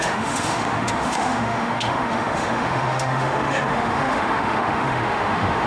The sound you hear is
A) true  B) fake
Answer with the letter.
B